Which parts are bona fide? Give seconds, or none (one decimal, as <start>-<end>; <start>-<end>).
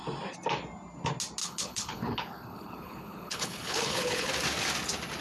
0.0-1.4; 4.3-5.2